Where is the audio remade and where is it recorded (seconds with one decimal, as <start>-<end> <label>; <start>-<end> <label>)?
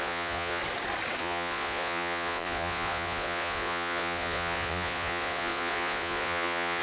0.0-0.6 remade; 0.6-1.2 recorded; 1.2-6.8 remade